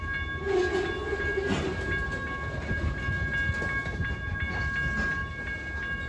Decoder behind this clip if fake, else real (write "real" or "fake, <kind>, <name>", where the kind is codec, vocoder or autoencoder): real